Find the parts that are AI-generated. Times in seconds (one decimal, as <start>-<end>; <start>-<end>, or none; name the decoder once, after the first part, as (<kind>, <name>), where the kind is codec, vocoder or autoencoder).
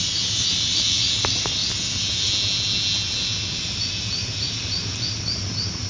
0.0-1.6 (vocoder, BigVGAN v2); 4.0-5.9